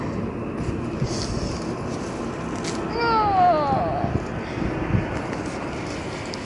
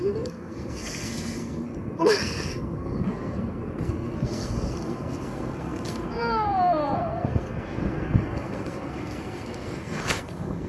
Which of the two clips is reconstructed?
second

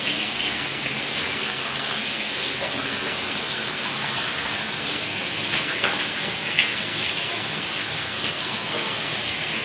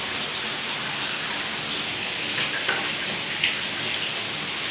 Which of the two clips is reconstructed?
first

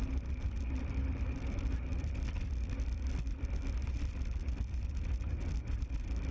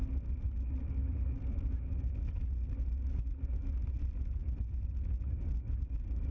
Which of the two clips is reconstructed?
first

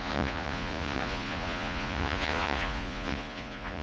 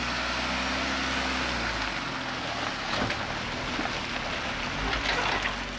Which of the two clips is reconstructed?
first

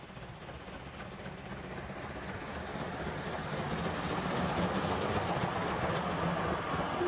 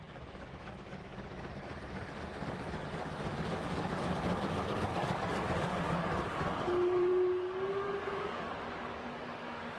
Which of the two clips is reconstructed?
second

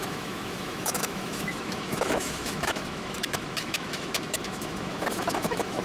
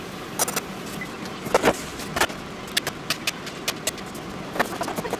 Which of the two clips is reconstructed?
first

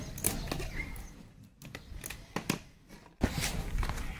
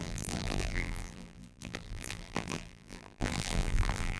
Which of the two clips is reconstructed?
second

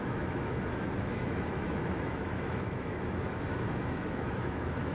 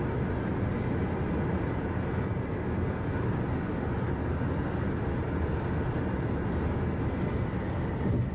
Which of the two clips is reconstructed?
first